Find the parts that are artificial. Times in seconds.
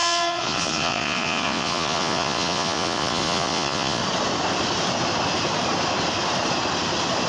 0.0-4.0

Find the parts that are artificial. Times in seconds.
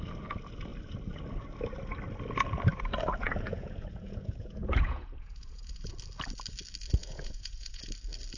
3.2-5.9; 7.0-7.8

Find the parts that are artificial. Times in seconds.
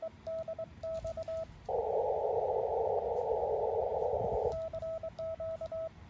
none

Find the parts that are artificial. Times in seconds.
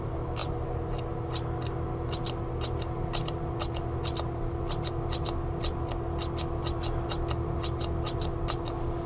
none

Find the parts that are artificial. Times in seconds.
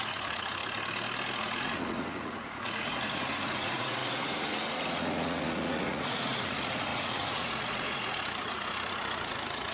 0.0-0.6; 1.4-9.7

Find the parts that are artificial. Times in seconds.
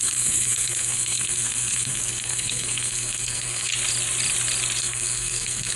0.0-3.7; 4.8-5.8